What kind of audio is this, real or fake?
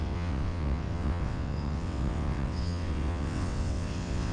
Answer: fake